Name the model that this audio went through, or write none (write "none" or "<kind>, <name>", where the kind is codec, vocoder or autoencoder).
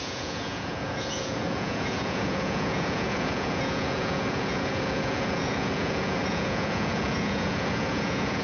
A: vocoder, Vocos